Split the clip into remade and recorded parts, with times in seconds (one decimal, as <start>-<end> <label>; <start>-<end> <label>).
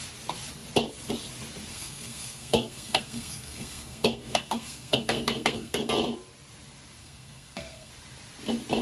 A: 0.0-1.7 recorded; 1.7-5.9 remade; 5.9-7.0 recorded; 7.0-7.9 remade; 7.9-8.8 recorded